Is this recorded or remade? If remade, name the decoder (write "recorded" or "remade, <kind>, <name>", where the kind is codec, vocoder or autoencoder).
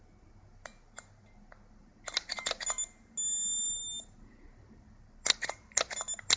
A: recorded